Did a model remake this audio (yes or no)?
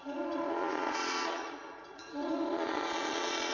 yes